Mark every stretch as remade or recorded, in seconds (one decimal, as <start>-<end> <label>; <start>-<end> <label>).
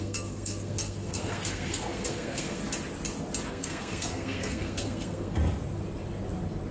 0.0-2.6 remade; 2.6-3.5 recorded; 3.5-5.4 remade; 5.4-6.7 recorded